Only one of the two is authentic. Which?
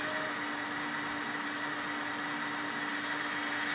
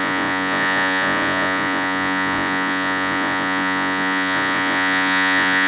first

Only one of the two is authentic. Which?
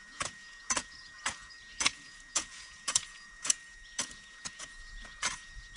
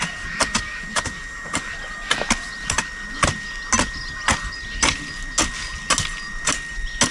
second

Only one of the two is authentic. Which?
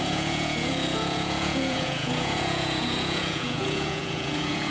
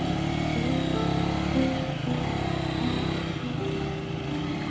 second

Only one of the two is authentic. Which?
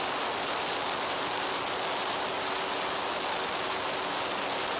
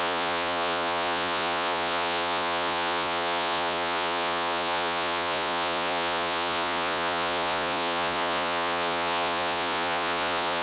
first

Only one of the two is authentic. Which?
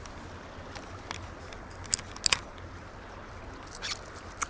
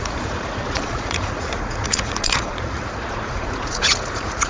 first